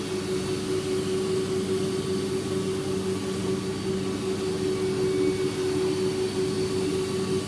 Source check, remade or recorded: recorded